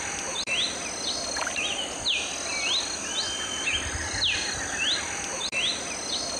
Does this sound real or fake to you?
real